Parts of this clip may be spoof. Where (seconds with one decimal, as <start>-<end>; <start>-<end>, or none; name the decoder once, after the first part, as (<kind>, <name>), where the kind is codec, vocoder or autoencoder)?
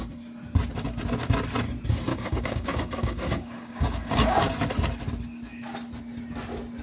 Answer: 2.1-4.5 (codec, DAC)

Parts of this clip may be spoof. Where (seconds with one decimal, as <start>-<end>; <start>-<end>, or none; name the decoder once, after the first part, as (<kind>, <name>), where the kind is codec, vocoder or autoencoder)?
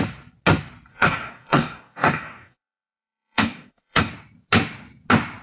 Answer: 0.9-4.1 (codec, DAC)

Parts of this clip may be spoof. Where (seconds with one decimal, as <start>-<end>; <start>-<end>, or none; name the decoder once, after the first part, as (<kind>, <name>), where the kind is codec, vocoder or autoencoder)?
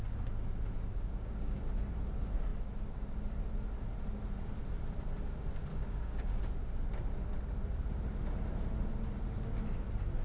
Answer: 0.9-1.6 (codec, DAC); 5.7-6.4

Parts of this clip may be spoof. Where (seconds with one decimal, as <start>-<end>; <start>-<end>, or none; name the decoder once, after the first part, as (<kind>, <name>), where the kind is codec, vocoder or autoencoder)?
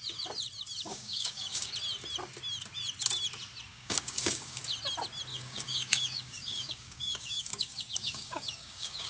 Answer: 0.9-1.7 (codec, DAC); 3.7-4.6; 5.3-9.1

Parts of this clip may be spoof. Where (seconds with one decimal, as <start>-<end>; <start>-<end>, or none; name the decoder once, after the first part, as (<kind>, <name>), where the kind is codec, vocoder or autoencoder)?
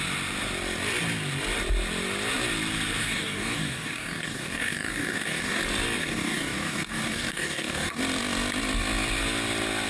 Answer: 3.0-5.6 (codec, DAC); 6.0-8.0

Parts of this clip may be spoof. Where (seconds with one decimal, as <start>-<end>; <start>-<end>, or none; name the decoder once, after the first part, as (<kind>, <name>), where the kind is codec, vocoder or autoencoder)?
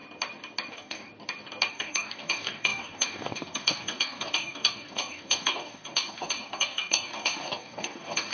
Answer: 0.7-1.1 (codec, DAC); 1.7-8.3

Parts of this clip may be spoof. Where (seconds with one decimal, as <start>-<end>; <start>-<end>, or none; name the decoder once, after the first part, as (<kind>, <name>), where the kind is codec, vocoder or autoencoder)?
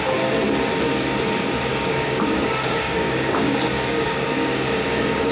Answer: 1.7-5.3 (codec, DAC)